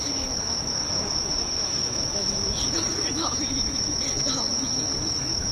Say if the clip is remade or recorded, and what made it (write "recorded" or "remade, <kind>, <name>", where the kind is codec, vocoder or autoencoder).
remade, autoencoder, DAC-VAE